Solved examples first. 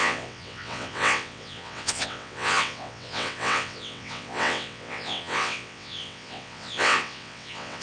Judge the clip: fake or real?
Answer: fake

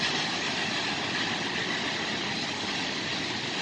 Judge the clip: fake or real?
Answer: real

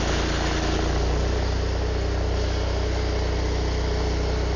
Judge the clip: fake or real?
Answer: real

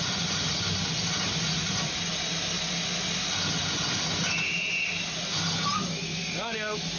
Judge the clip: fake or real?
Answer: real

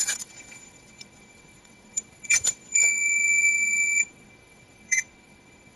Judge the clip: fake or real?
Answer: fake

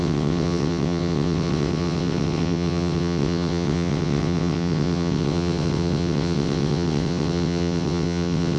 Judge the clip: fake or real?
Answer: fake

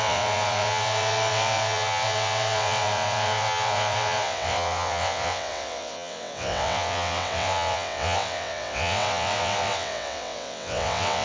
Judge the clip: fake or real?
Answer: fake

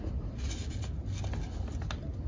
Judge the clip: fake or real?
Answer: real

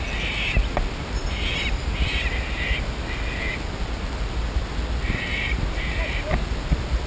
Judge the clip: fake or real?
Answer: real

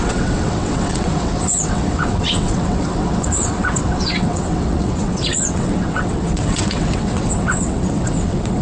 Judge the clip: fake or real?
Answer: fake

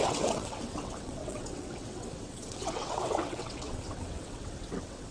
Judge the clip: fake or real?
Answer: fake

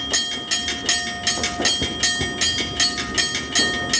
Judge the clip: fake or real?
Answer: real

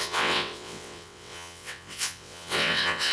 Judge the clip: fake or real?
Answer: fake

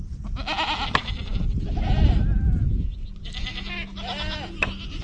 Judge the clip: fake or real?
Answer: real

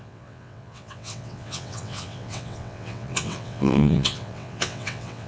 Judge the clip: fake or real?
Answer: fake